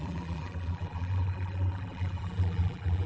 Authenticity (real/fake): fake